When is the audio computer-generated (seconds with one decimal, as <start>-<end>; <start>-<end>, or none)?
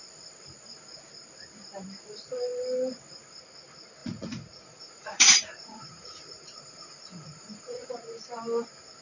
4.0-7.9